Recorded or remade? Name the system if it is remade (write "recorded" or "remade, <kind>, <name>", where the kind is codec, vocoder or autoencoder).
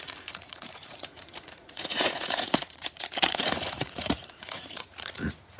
remade, vocoder, Vocos